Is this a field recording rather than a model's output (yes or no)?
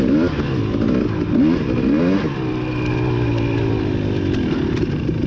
yes